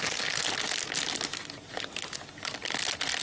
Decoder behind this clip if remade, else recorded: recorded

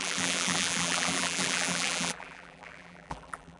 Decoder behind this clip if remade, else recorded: remade, vocoder, BigVGAN v2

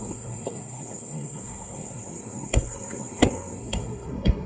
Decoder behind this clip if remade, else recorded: remade, codec, SNAC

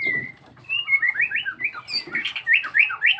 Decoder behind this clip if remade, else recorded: recorded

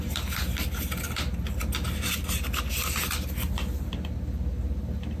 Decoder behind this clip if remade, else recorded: recorded